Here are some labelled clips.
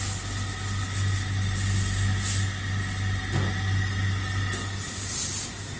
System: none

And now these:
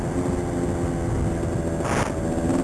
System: none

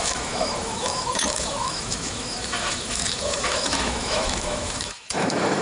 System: autoencoder, DAC-VAE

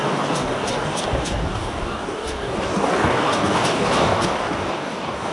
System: codec, DAC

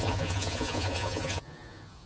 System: vocoder, Vocos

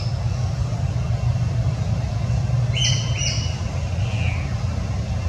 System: none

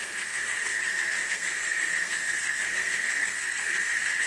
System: codec, SNAC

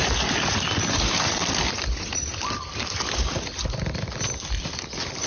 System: vocoder, BigVGAN v2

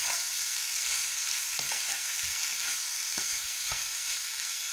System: codec, SNAC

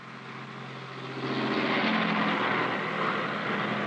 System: none